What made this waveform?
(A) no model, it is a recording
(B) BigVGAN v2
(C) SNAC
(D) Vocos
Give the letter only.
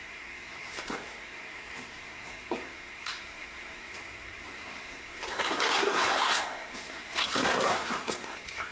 C